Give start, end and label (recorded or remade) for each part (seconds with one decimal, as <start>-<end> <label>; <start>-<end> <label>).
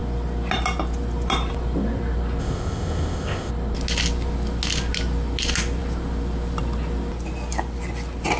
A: 0.0-2.4 recorded; 2.4-3.5 remade; 3.5-8.4 recorded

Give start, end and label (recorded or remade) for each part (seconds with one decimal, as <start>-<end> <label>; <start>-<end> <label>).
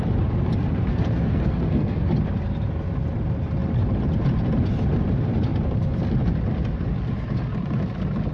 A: 0.0-0.9 recorded; 0.9-2.1 remade; 2.1-8.3 recorded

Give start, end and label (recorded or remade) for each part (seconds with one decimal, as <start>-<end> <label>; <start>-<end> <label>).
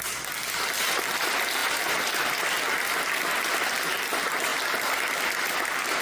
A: 0.0-1.6 recorded; 1.6-2.5 remade; 2.5-6.0 recorded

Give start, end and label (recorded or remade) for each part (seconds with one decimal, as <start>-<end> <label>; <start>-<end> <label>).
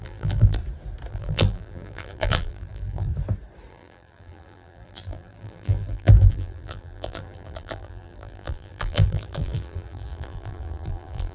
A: 0.0-0.6 remade; 0.6-1.1 recorded; 1.1-3.1 remade; 3.1-3.7 recorded; 3.7-11.3 remade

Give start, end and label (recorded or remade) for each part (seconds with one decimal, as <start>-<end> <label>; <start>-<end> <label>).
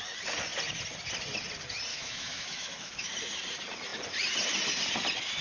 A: 0.0-1.9 recorded; 1.9-3.1 remade; 3.1-5.4 recorded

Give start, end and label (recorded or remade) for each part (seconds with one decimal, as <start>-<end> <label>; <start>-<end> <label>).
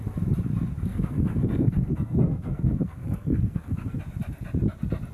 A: 0.0-0.9 recorded; 0.9-4.0 remade; 4.0-5.1 recorded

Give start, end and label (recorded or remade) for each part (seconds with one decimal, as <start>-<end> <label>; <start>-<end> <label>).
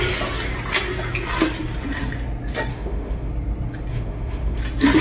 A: 0.0-2.7 recorded; 2.7-3.3 remade; 3.3-3.9 recorded; 3.9-4.6 remade; 4.6-5.0 recorded